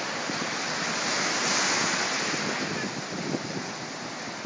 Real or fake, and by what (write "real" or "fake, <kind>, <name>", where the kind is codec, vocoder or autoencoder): real